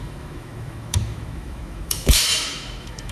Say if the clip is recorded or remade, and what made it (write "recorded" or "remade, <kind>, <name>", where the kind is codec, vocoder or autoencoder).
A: remade, autoencoder, DAC-VAE